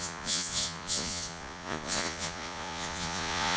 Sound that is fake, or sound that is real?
fake